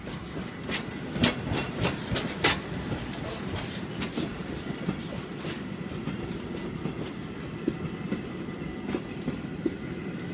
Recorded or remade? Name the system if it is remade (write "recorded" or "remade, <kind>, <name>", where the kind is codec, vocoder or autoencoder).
recorded